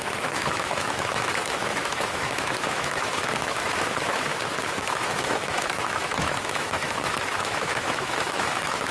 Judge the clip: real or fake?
fake